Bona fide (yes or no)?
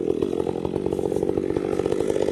yes